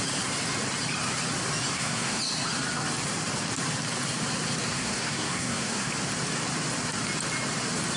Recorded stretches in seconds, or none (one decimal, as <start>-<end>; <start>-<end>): 0.0-1.7; 2.2-4.7; 5.9-8.0